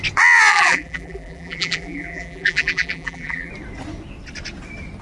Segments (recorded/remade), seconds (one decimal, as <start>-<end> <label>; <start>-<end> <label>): 0.0-0.5 recorded; 0.5-3.5 remade; 3.5-5.0 recorded